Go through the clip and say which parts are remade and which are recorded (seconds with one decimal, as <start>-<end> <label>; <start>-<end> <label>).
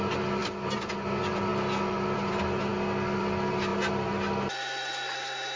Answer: 0.0-5.6 recorded